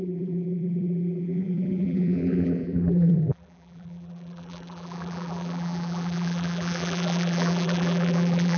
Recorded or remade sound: remade